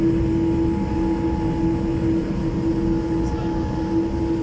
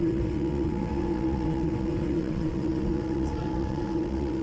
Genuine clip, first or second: first